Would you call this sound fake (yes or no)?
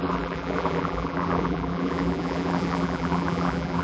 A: yes